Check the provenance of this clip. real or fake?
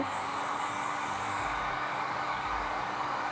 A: fake